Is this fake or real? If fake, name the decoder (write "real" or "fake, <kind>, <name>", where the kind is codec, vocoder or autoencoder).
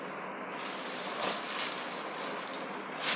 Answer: real